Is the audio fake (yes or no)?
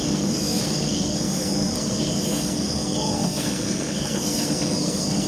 yes